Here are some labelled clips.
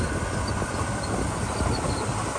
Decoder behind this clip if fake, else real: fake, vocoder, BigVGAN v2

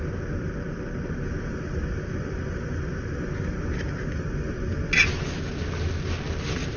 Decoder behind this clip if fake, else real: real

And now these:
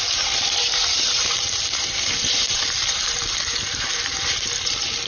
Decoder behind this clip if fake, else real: fake, vocoder, BigVGAN v2